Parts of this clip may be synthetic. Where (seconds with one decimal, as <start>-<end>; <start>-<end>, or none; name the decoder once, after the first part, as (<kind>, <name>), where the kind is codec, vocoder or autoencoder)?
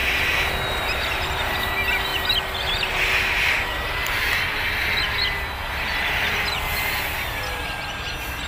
0.0-1.7 (vocoder, BigVGAN v2)